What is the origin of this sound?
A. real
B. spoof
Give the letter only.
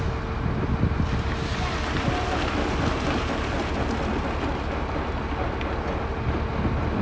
A